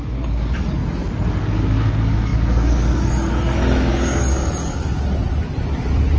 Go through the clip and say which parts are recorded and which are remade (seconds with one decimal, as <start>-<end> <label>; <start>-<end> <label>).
0.0-0.8 remade; 0.8-1.4 recorded; 1.4-4.4 remade; 4.4-6.2 recorded